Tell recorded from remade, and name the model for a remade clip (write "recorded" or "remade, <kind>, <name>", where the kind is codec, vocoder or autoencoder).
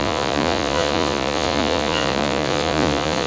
remade, vocoder, Vocos